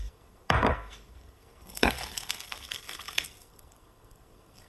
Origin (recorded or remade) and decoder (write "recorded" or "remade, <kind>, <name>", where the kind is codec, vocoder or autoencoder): remade, codec, SNAC